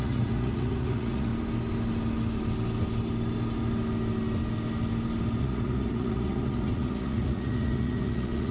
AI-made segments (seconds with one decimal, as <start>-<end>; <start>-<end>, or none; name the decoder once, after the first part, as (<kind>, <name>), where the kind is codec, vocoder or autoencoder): 0.0-1.3 (vocoder, Vocos); 5.4-8.5